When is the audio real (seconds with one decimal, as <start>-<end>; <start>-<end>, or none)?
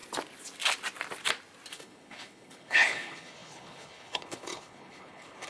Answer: 0.0-1.7